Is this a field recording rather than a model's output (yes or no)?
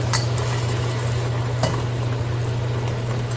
yes